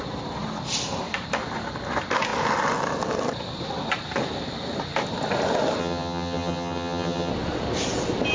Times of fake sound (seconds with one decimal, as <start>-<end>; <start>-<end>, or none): 5.8-7.3